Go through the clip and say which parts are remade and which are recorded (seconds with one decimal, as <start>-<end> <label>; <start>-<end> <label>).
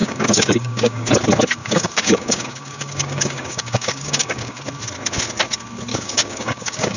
0.0-1.1 remade; 1.1-1.6 recorded; 1.6-4.6 remade; 4.6-5.9 recorded; 5.9-7.0 remade